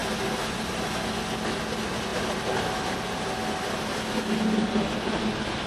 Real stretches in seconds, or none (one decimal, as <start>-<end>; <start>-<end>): 0.0-5.7